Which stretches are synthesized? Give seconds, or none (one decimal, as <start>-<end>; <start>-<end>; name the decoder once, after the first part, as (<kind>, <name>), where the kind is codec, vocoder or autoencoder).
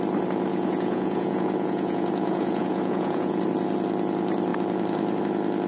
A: 0.5-3.4 (vocoder, Vocos)